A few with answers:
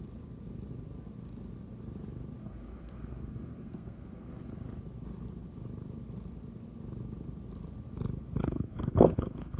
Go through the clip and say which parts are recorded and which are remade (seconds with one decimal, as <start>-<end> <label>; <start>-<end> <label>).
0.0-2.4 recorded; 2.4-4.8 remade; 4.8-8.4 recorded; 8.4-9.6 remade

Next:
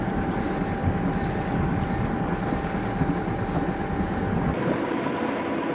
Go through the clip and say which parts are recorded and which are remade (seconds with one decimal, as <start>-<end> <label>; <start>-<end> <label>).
0.0-5.7 recorded

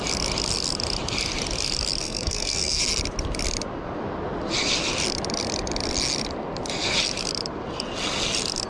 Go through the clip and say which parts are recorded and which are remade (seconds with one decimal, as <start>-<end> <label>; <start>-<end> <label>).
0.0-2.0 recorded; 2.0-2.8 remade; 2.8-8.7 recorded

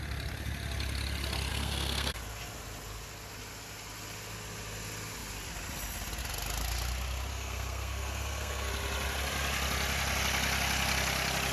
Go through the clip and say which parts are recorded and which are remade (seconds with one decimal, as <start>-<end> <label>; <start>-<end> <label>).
0.0-1.5 recorded; 1.5-2.2 remade; 2.2-7.3 recorded; 7.3-8.7 remade; 8.7-11.5 recorded

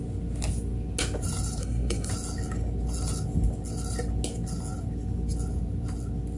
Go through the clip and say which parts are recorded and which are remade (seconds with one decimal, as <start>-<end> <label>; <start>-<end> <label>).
0.0-1.6 recorded; 1.6-2.1 remade; 2.1-6.4 recorded

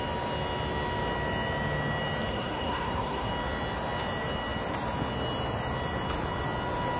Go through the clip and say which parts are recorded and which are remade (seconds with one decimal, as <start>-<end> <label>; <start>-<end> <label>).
0.0-2.3 recorded; 2.3-3.3 remade; 3.3-7.0 recorded